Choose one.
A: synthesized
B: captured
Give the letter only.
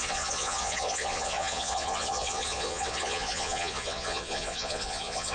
A